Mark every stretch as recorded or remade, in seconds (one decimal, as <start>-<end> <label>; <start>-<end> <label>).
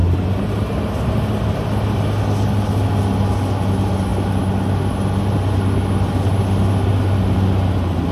0.0-8.1 recorded